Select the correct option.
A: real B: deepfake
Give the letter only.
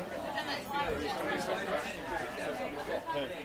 A